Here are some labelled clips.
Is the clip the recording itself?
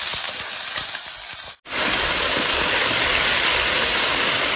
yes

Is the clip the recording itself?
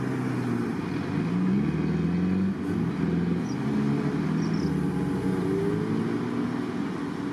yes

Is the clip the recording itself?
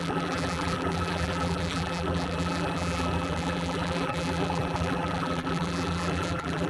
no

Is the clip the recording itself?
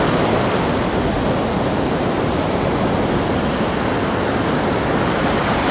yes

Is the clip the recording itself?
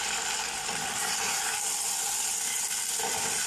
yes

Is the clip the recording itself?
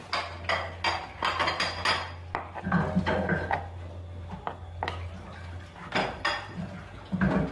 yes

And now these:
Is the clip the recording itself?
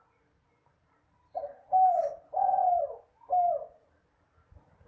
no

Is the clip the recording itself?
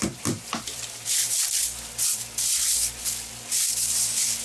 no